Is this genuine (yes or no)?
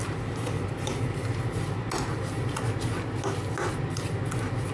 yes